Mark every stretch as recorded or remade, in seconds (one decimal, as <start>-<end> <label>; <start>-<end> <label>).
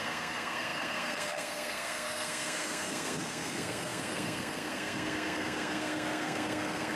0.0-7.0 remade